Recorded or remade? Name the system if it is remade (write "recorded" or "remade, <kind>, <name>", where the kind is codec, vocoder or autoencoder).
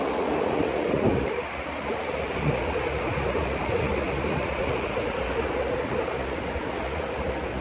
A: remade, vocoder, Vocos